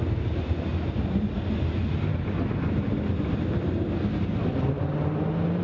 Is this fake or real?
real